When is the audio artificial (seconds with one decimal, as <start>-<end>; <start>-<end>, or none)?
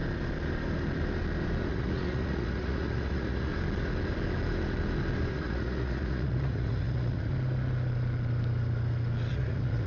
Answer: 1.7-3.5; 5.3-7.3; 9.3-9.9